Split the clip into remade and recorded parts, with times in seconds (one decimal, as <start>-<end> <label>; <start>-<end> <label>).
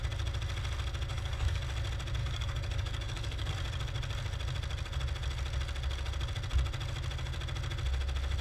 0.0-1.1 recorded; 1.1-1.6 remade; 1.6-2.2 recorded; 2.2-3.5 remade; 3.5-8.4 recorded